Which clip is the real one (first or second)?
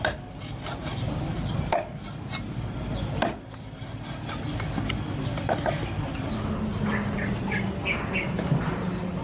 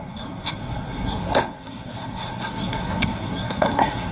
first